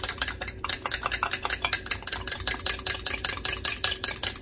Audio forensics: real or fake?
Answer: real